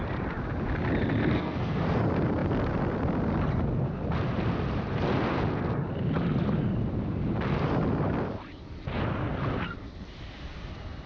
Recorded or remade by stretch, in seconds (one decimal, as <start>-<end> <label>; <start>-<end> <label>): 0.0-1.2 recorded; 1.2-1.8 remade; 1.8-11.1 recorded